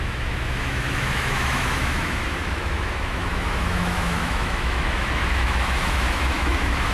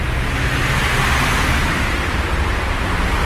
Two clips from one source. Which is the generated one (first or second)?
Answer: first